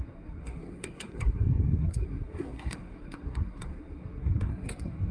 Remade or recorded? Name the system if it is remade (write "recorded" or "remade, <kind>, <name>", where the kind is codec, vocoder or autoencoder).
remade, codec, SNAC